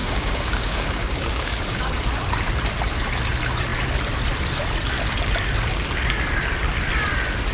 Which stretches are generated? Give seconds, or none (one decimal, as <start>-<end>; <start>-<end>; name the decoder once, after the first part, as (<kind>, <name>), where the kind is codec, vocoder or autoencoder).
0.0-1.8 (codec, DAC)